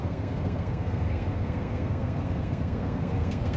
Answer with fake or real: fake